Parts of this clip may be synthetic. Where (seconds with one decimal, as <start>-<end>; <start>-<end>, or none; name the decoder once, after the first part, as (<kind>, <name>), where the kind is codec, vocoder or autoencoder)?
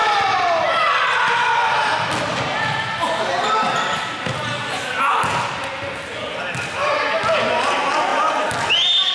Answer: none